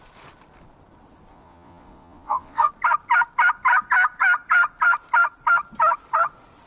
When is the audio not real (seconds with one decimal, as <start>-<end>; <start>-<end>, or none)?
1.3-2.7